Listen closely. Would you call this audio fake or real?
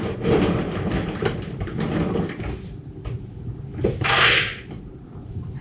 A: real